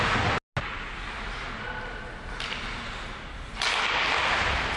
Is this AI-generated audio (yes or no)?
no